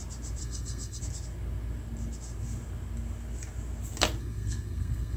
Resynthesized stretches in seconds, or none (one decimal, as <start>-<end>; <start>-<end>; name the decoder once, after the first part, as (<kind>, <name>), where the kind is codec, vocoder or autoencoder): 0.4-1.0 (codec, SNAC); 4.2-5.2